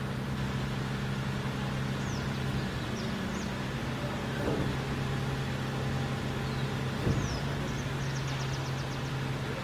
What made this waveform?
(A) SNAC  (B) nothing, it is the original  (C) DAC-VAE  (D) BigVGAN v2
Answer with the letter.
B